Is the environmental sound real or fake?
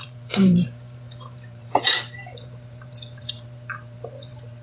fake